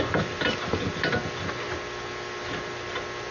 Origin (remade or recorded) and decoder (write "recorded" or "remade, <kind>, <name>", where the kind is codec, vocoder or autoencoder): remade, vocoder, BigVGAN v2